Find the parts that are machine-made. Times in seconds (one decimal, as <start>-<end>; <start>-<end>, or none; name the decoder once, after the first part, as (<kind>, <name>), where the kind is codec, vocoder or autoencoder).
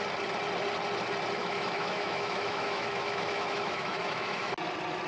1.4-4.5 (autoencoder, DAC-VAE)